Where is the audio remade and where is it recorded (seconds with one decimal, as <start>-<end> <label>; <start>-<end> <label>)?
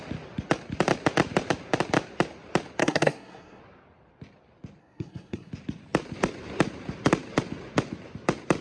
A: 0.0-2.8 recorded; 2.8-3.6 remade; 3.6-4.8 recorded; 4.8-5.5 remade; 5.5-8.6 recorded